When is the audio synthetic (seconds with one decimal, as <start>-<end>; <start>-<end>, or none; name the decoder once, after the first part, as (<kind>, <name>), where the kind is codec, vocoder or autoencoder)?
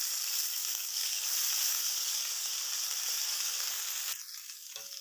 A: 0.6-1.2 (codec, DAC); 1.7-2.5; 3.2-3.8; 4.4-5.0